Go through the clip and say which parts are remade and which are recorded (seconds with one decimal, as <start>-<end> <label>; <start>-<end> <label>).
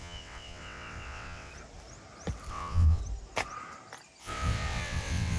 0.0-1.5 remade; 1.5-2.5 recorded; 2.5-3.0 remade; 3.0-4.2 recorded; 4.2-5.4 remade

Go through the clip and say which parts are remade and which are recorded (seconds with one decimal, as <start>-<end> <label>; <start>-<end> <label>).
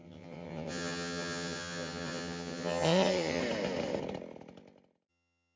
0.0-3.4 remade; 3.4-5.1 recorded; 5.1-5.6 remade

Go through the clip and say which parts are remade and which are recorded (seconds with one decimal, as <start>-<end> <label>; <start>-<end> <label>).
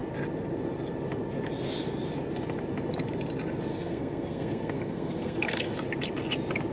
0.0-3.7 recorded; 3.7-5.7 remade; 5.7-6.7 recorded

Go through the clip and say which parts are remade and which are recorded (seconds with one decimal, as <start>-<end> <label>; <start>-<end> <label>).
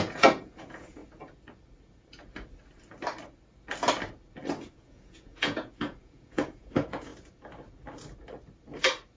0.0-1.0 remade; 1.0-4.7 recorded; 4.7-7.1 remade; 7.1-9.2 recorded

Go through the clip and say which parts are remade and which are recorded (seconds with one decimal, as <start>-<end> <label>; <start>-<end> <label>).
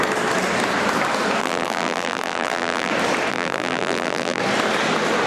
0.0-1.4 recorded; 1.4-2.9 remade; 2.9-3.3 recorded; 3.3-4.4 remade; 4.4-5.3 recorded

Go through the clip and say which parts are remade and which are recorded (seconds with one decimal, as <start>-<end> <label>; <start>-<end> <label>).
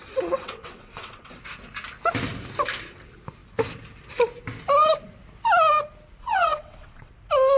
0.0-1.4 remade; 1.4-6.2 recorded; 6.2-7.1 remade; 7.1-7.6 recorded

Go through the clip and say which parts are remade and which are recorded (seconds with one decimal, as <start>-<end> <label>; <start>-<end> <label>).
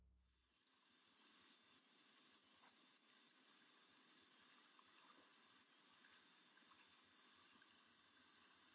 0.0-8.7 recorded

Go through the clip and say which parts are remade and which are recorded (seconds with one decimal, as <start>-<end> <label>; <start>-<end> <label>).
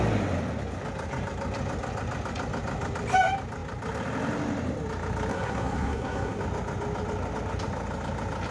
0.0-5.3 recorded; 5.3-6.4 remade; 6.4-8.5 recorded